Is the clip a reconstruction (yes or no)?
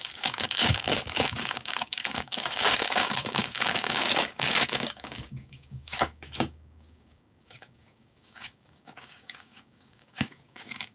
yes